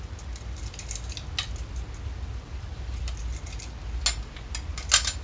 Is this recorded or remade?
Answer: recorded